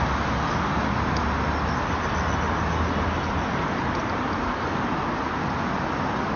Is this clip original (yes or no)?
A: yes